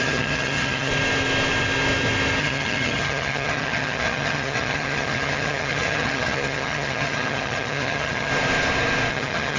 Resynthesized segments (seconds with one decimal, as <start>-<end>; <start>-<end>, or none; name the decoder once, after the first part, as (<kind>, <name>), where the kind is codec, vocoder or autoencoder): 0.0-0.9 (vocoder, HiFi-GAN); 2.4-8.3; 9.1-9.6